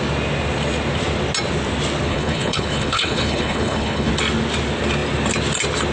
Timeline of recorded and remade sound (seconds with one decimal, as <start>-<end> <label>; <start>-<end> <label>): 0.0-2.1 recorded; 2.1-4.1 remade; 4.1-5.9 recorded